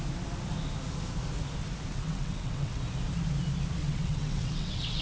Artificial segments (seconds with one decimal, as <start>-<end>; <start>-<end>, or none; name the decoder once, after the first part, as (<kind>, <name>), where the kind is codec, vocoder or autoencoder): 1.9-2.8 (vocoder, WaveNeXt); 3.8-5.0